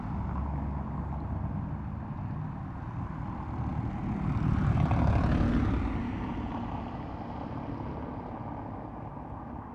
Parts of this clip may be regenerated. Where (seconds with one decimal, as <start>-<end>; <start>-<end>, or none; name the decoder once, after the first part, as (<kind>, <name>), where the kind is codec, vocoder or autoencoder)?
none